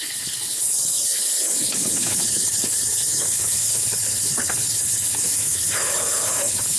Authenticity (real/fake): fake